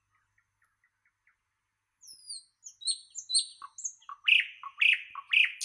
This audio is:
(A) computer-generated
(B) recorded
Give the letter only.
B